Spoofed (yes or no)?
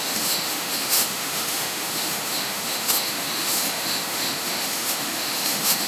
yes